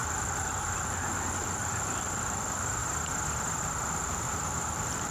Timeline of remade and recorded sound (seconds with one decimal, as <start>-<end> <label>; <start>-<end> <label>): 0.0-2.8 remade; 2.8-3.6 recorded; 3.6-5.1 remade